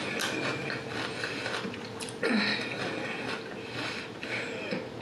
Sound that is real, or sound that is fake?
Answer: real